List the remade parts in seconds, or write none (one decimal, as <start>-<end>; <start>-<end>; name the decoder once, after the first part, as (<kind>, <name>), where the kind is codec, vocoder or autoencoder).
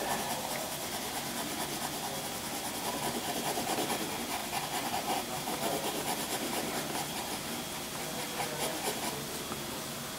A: 4.4-7.5 (vocoder, BigVGAN v2); 8.7-9.7